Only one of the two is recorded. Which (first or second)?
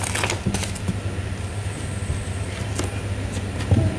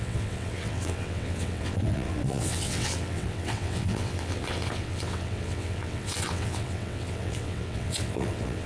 first